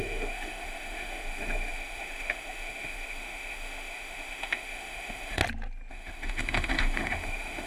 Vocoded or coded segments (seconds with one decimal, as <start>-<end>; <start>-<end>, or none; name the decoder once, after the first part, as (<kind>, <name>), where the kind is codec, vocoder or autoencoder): 0.0-5.4 (autoencoder, DAC-VAE); 5.9-7.7